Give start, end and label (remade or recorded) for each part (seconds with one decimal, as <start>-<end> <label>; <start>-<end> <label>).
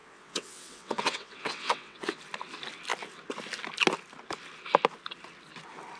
0.0-2.2 remade; 2.2-6.0 recorded